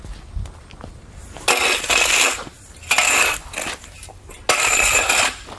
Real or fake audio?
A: real